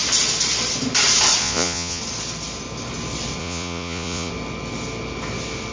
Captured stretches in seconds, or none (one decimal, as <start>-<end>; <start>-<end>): 0.0-1.4; 2.0-3.4; 4.3-5.7